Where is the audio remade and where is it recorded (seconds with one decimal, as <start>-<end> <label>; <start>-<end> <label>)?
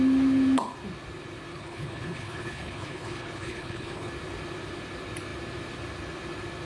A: 0.0-1.5 recorded; 1.5-4.1 remade; 4.1-6.7 recorded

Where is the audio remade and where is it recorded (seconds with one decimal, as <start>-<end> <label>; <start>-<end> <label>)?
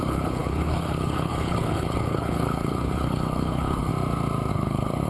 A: 0.0-3.9 remade; 3.9-4.5 recorded; 4.5-5.1 remade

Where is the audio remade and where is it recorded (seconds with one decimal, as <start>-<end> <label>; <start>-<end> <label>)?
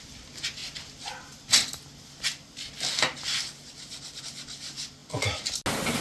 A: 0.0-6.0 recorded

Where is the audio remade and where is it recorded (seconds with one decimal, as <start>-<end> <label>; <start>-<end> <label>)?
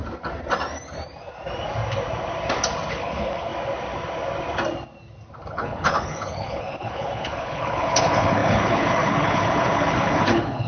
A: 0.0-2.9 recorded; 2.9-3.5 remade; 3.5-5.5 recorded; 5.5-10.7 remade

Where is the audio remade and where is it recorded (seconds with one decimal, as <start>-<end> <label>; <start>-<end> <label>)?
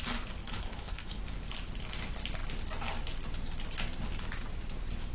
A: 0.0-0.4 recorded; 0.4-1.2 remade; 1.2-5.1 recorded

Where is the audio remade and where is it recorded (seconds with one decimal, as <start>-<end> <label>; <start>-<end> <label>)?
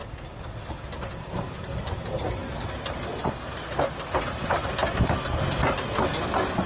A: 0.0-6.7 recorded